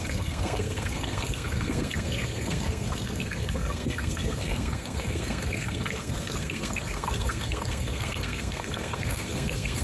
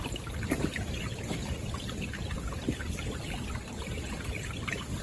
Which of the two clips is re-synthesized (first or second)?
first